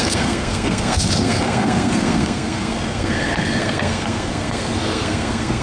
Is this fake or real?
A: fake